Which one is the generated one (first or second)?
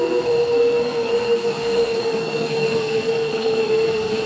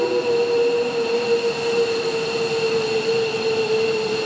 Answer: first